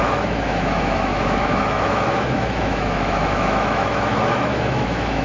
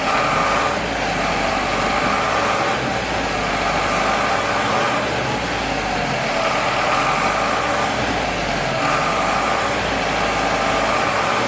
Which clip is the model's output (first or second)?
first